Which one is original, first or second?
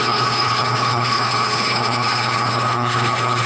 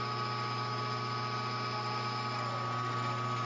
second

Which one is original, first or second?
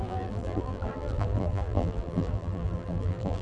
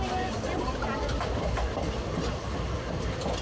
second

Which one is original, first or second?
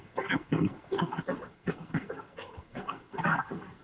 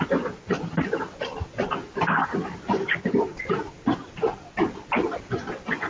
second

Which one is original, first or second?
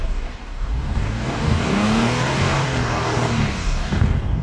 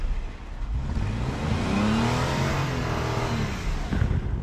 second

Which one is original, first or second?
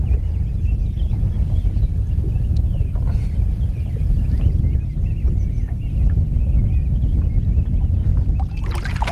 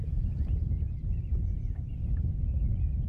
first